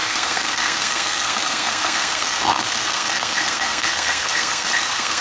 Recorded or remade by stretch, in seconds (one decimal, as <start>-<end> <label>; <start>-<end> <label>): 0.0-5.2 remade